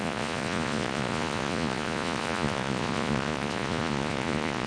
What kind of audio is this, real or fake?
fake